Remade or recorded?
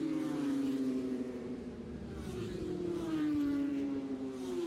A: remade